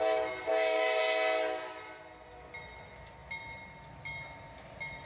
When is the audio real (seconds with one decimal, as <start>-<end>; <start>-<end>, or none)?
0.0-0.5; 1.0-5.1